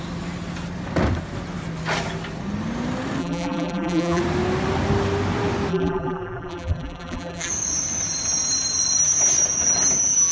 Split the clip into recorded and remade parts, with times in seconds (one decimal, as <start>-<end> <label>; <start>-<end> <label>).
0.0-3.2 recorded; 3.2-4.2 remade; 4.2-5.7 recorded; 5.7-7.5 remade; 7.5-10.3 recorded